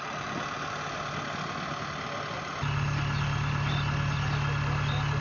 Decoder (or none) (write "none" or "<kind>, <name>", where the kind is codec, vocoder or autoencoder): none